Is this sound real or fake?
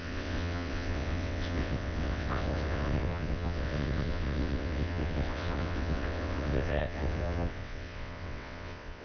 fake